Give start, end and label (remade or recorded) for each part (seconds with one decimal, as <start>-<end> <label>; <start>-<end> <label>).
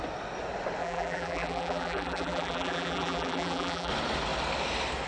0.0-0.8 recorded; 0.8-3.9 remade; 3.9-5.1 recorded